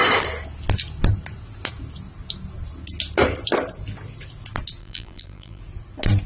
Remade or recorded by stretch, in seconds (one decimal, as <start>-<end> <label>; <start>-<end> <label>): 0.0-4.8 recorded; 4.8-5.6 remade; 5.6-6.3 recorded